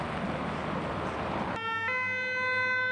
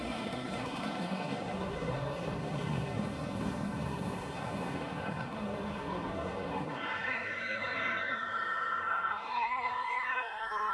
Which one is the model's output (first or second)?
second